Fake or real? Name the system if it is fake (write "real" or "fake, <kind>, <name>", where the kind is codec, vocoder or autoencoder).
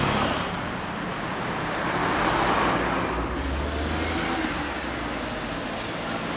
real